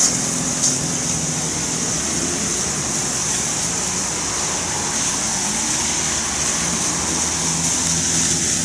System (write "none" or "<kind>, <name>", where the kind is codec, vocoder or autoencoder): none